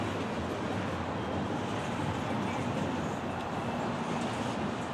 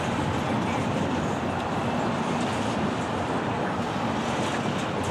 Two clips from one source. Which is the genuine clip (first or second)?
first